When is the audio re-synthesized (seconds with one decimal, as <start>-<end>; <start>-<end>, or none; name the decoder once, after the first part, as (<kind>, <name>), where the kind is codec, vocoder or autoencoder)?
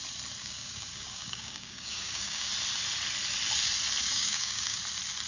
0.4-2.5 (codec, DAC); 4.0-4.8